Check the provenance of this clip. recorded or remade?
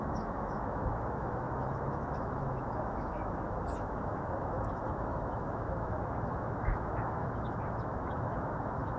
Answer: remade